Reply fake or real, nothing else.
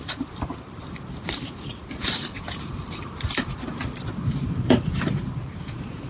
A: fake